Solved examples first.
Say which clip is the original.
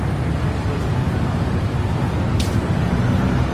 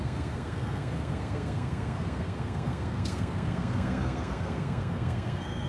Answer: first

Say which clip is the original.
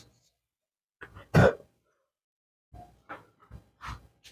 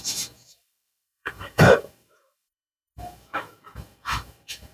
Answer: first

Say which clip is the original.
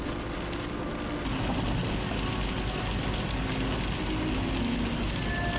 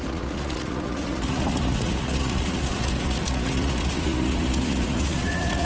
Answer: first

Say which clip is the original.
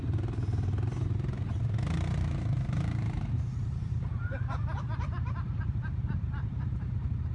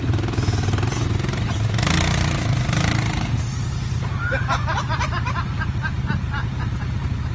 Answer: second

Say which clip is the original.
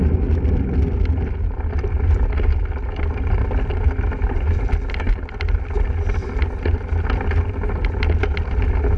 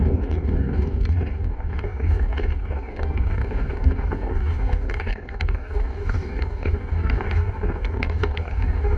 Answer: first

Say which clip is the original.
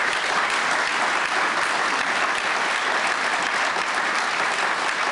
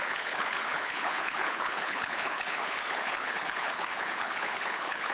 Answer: first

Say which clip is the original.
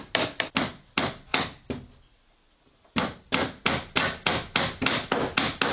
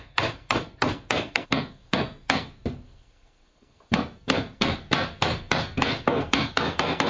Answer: first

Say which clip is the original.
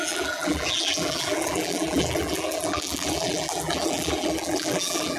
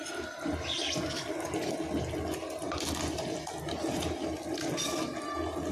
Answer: second